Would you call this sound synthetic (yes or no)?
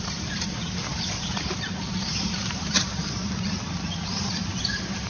yes